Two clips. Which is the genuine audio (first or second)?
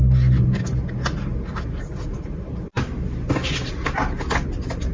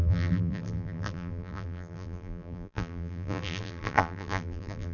first